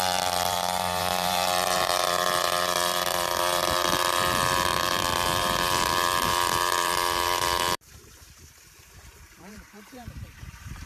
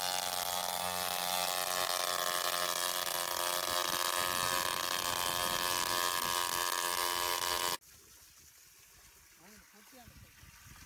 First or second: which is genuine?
second